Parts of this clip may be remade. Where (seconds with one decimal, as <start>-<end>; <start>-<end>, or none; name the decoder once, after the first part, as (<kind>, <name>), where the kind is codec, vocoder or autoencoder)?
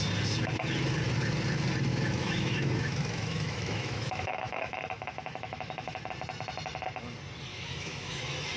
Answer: 1.9-6.1 (autoencoder, DAC-VAE); 7.5-8.2